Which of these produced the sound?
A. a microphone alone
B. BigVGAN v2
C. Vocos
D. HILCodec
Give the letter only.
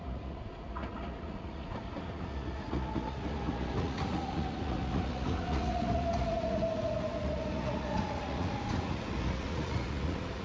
C